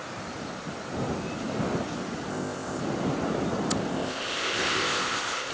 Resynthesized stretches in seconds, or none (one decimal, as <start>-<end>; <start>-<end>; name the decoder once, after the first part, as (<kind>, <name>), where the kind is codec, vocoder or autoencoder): 2.3-2.8 (codec, ZipCodec); 3.9-5.5